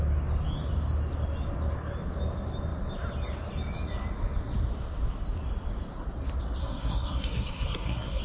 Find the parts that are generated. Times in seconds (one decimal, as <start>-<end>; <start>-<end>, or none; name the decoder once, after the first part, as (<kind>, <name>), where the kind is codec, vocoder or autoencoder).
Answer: 6.6-8.2 (codec, SNAC)